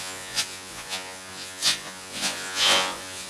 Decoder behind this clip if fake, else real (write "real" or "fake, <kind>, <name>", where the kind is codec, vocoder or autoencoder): fake, vocoder, Vocos